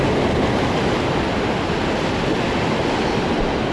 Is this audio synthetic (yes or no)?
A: no